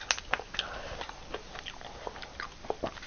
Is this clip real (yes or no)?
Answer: yes